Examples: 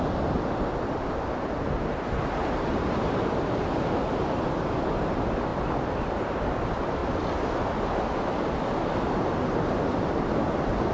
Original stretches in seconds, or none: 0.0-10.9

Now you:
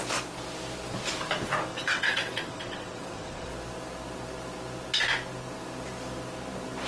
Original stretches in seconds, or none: 0.0-1.7; 3.5-6.9

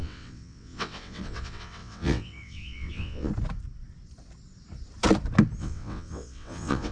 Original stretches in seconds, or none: 3.3-5.6

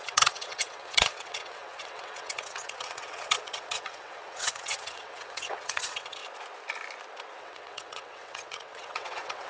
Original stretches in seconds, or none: 6.2-7.4

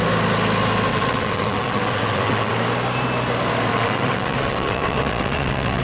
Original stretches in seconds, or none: 0.0-0.9; 2.5-3.7

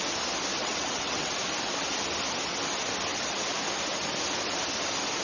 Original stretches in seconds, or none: 0.0-0.6; 1.3-5.2

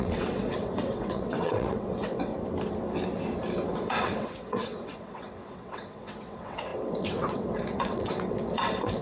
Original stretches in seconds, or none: 2.3-3.7

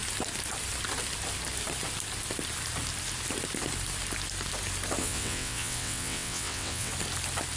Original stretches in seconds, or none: 0.0-5.0; 6.9-7.6